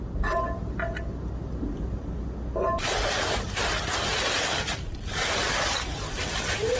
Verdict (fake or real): real